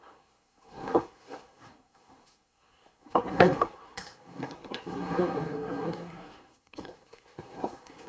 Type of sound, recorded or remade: remade